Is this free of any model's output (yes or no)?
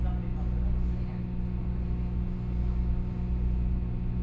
yes